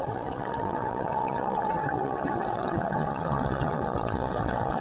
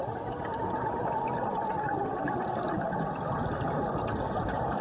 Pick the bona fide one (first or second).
second